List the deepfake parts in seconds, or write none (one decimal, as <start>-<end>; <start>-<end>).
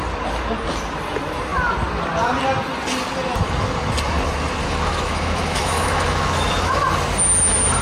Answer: 4.6-6.8